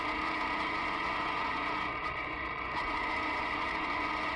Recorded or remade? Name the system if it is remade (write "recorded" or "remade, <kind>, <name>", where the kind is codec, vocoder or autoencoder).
remade, vocoder, Vocos